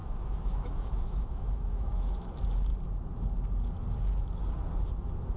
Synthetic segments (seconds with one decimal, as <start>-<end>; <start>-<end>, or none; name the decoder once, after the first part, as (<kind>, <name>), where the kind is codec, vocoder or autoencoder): 0.0-2.3 (autoencoder, DAC-VAE)

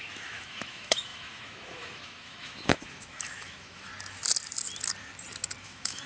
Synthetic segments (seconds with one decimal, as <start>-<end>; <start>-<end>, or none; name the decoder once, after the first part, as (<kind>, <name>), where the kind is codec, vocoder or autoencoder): 0.0-3.9 (autoencoder, DAC-VAE); 5.6-6.1

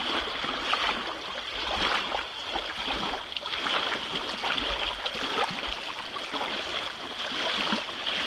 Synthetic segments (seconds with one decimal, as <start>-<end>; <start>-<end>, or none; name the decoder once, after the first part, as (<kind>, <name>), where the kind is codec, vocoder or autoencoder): none

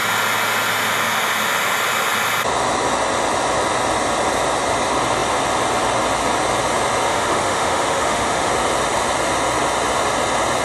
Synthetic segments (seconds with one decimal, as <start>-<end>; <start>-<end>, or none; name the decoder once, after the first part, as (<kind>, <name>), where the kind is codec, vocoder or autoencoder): 7.1-8.5 (autoencoder, DAC-VAE)

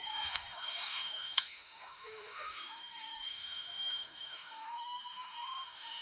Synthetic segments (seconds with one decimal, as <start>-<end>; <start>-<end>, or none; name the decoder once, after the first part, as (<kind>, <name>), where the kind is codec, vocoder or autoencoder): 0.0-6.0 (autoencoder, DAC-VAE)